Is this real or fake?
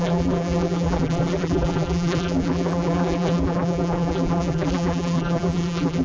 fake